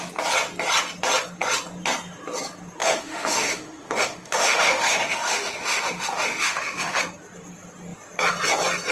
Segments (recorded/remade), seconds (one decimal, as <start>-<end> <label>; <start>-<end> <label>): 0.0-2.8 recorded; 2.8-7.0 remade; 7.0-8.9 recorded